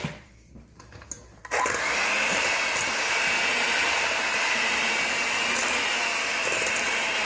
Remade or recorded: remade